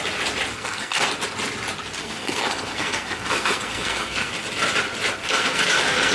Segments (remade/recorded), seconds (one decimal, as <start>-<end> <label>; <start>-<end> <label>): 0.0-0.5 recorded; 0.5-1.1 remade; 1.1-2.0 recorded; 2.0-4.3 remade; 4.3-5.2 recorded; 5.2-6.1 remade